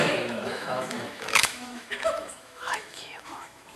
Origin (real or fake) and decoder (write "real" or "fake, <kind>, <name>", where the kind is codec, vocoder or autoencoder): fake, autoencoder, DAC-VAE